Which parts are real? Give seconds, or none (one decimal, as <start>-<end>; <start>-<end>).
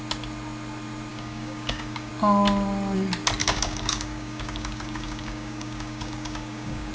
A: 0.0-1.1; 2.1-3.4